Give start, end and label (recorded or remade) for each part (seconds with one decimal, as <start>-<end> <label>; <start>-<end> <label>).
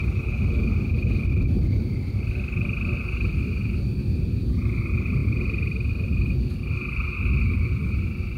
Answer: 0.0-8.4 recorded